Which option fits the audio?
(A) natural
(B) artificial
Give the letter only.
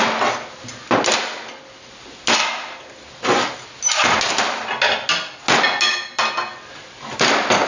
A